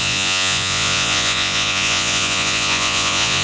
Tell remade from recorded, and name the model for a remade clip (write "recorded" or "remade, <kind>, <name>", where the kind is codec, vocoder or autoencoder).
remade, vocoder, Vocos